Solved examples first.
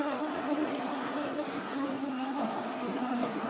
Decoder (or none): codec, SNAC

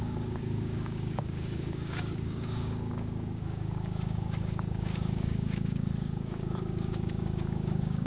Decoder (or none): codec, DAC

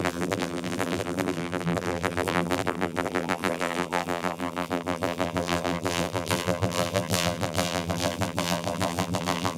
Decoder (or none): vocoder, BigVGAN v2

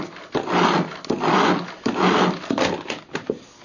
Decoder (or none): none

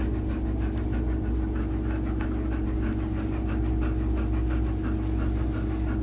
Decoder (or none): none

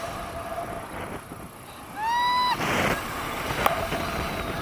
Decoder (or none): none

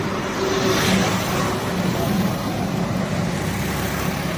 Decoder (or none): none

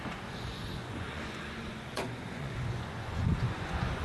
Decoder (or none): vocoder, Vocos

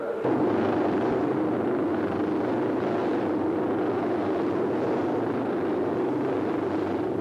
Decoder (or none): none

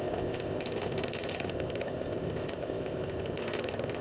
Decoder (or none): codec, ZipCodec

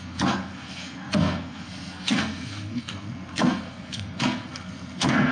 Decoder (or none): codec, SNAC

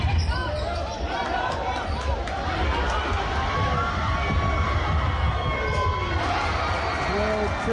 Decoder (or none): none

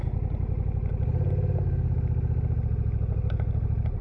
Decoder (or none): none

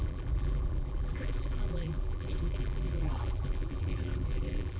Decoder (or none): vocoder, BigVGAN v2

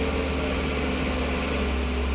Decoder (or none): none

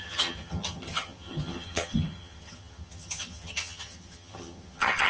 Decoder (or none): vocoder, HiFi-GAN